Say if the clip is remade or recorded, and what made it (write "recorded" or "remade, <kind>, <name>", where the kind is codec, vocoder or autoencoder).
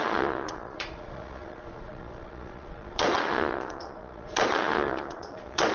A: remade, vocoder, Vocos